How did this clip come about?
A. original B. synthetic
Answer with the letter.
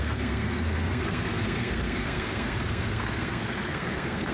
B